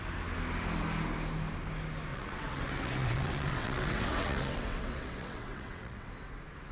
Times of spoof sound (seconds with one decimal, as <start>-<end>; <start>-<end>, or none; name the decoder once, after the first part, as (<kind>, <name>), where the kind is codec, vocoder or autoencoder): 2.1-6.1 (vocoder, WaveNeXt)